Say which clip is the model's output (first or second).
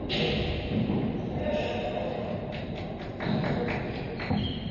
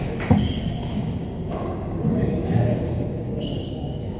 second